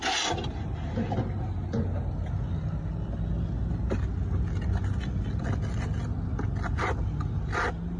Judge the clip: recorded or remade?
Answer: recorded